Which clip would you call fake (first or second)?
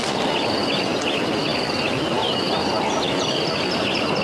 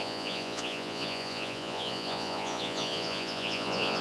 second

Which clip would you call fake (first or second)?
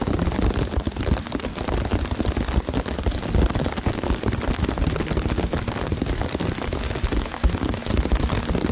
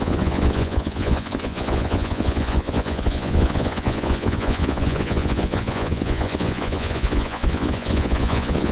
second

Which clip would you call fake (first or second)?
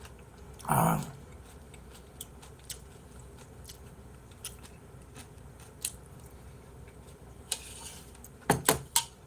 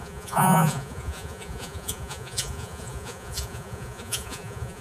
second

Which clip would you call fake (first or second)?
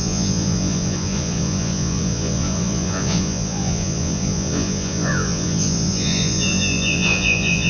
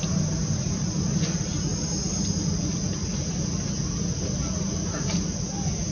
first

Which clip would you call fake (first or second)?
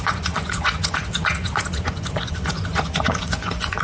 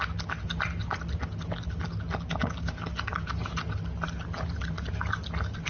first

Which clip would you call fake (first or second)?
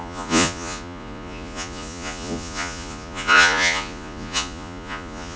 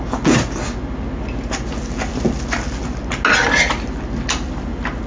first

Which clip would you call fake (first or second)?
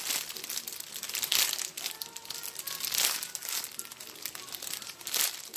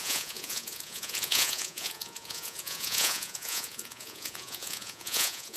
second